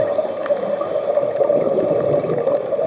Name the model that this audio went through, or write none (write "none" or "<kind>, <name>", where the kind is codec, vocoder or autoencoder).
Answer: none